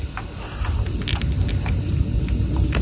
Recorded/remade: recorded